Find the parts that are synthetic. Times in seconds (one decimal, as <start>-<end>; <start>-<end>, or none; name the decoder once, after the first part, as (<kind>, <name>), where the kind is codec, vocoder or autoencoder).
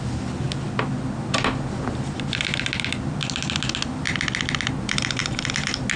none